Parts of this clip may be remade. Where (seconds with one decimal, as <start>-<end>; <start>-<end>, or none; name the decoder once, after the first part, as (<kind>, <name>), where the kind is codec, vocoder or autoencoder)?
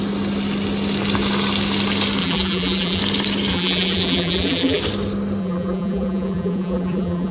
2.2-3.0 (vocoder, BigVGAN v2); 3.5-4.8; 5.4-7.3